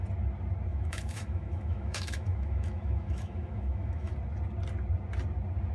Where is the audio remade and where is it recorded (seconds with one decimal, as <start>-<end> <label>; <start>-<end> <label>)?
0.0-0.7 recorded; 0.7-4.1 remade; 4.1-5.7 recorded